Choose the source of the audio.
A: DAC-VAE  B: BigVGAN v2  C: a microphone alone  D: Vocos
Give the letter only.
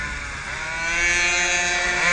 C